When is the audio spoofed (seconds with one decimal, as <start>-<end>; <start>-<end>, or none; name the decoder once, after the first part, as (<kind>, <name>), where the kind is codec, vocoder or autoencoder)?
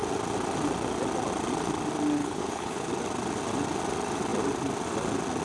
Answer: 2.2-2.9 (codec, HILCodec)